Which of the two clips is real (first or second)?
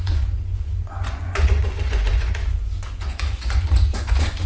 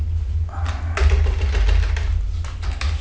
second